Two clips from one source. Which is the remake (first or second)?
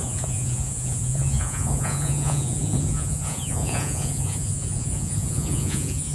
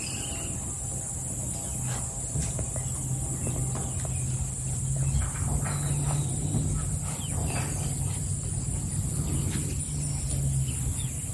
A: first